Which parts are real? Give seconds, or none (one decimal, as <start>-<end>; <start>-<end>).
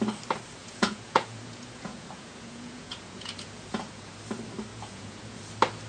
0.0-0.6; 4.1-4.7; 5.5-5.9